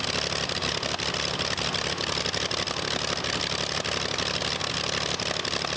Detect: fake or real real